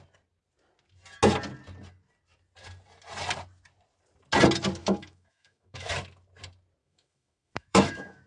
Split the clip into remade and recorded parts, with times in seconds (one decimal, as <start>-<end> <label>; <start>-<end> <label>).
0.0-4.8 recorded; 4.8-5.9 remade; 5.9-6.8 recorded; 6.8-8.3 remade